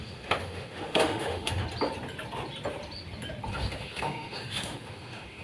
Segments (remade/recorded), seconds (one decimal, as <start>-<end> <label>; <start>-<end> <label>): 0.0-1.6 remade; 1.6-3.5 recorded; 3.5-5.4 remade